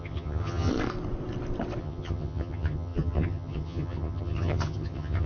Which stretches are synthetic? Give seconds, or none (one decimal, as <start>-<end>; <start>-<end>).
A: 0.0-0.7; 1.8-5.3